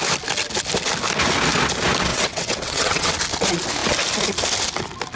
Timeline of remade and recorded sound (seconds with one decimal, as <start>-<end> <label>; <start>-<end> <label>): 0.0-2.1 recorded; 2.1-3.1 remade; 3.1-5.2 recorded